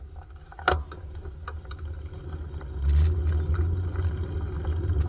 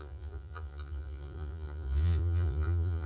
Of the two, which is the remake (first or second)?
second